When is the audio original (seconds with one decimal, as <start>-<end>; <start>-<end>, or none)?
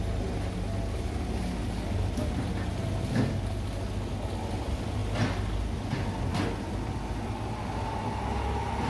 0.0-8.9